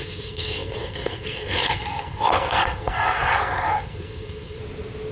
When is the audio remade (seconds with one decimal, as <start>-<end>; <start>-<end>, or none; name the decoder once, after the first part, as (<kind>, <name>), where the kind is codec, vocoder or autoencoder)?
0.0-4.6 (codec, SNAC)